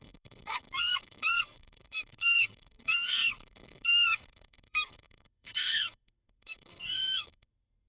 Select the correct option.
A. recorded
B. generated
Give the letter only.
B